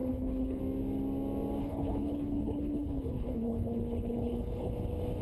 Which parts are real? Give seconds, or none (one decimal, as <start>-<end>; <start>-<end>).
0.6-1.6; 4.7-5.2